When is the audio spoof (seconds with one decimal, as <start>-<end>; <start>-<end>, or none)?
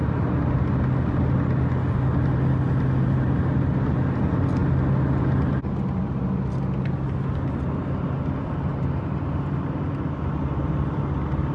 none